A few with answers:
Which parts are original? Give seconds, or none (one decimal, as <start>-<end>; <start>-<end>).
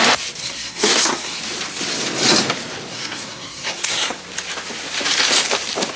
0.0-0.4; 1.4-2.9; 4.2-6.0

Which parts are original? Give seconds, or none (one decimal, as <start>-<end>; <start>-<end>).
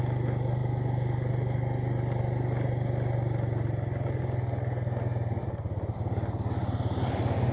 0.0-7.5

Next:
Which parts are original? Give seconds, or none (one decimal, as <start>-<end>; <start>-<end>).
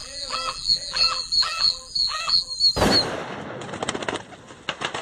2.5-5.0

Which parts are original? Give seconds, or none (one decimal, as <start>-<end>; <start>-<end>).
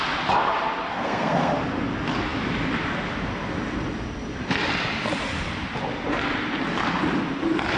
0.0-0.9; 1.5-7.8